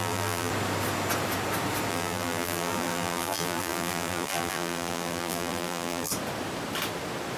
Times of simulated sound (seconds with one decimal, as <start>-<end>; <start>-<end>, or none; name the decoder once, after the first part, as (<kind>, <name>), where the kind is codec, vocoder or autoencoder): 0.0-0.5 (vocoder, BigVGAN v2); 1.9-6.1